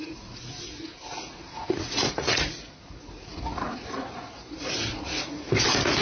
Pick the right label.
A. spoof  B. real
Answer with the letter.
A